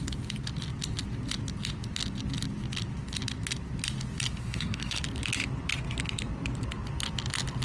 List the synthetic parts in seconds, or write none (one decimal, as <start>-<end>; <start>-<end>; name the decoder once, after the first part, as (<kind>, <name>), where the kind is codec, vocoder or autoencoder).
4.4-5.0 (codec, SNAC)